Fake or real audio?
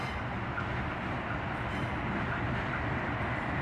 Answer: real